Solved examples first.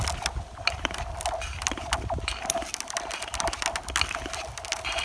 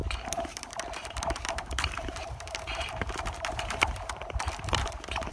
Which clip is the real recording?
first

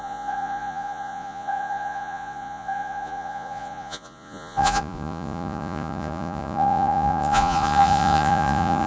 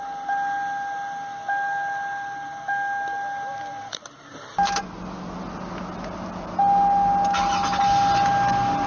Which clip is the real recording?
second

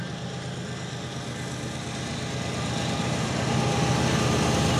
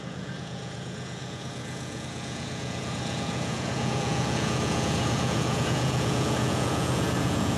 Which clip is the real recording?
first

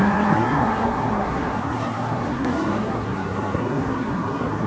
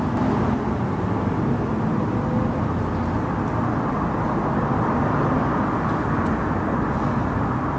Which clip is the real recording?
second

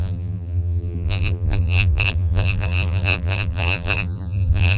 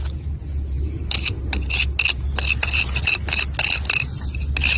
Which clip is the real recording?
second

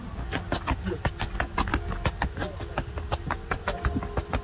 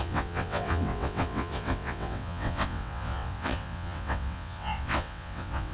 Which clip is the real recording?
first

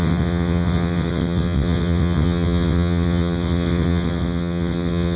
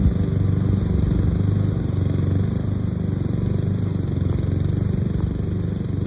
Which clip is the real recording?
second